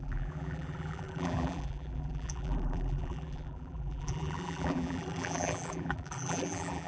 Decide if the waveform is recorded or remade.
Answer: remade